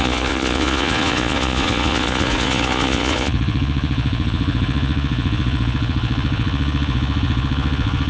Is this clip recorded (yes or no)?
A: no